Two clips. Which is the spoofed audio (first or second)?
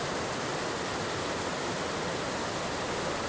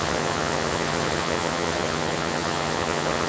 second